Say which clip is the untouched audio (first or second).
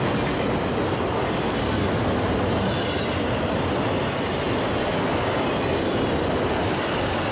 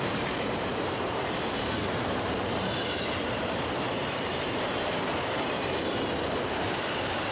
first